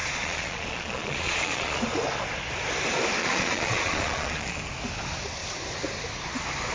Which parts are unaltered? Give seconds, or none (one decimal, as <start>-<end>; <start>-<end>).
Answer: 1.8-3.2; 4.6-6.7